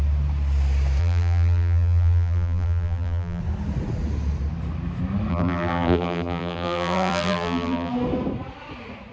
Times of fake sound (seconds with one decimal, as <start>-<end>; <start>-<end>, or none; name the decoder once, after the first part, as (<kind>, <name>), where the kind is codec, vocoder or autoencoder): 1.0-3.4 (vocoder, BigVGAN v2); 5.3-7.9

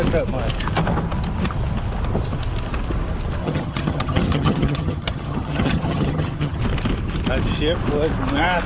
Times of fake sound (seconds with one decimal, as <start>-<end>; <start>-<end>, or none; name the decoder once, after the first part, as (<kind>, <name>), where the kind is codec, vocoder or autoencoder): 3.4-6.6 (vocoder, HiFi-GAN)